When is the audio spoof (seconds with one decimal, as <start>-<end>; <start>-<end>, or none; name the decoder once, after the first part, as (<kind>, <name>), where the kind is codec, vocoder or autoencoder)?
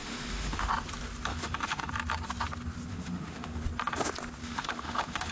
0.0-0.7 (autoencoder, DAC-VAE); 1.3-1.9; 2.9-3.6; 4.4-5.3